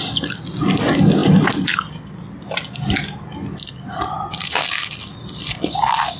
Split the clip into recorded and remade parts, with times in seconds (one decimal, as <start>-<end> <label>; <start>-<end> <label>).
0.0-6.2 recorded